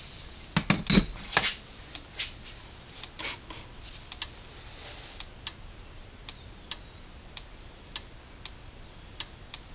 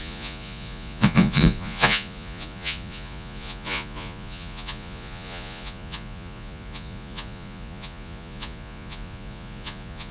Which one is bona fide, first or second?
first